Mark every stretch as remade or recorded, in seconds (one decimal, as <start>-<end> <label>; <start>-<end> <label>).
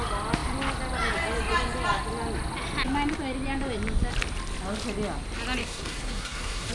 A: 0.0-5.6 recorded; 5.6-6.7 remade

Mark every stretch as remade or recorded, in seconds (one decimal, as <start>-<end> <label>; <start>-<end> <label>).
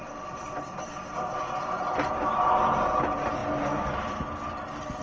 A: 0.0-5.0 recorded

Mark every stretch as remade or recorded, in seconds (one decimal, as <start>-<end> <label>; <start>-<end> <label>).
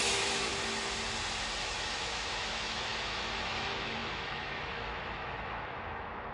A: 0.0-0.5 remade; 0.5-1.4 recorded; 1.4-6.3 remade